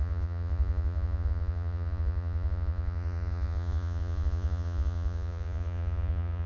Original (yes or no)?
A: no